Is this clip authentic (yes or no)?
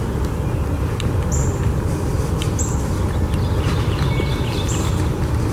yes